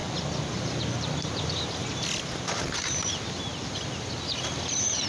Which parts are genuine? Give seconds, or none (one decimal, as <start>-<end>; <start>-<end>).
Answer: 0.0-5.1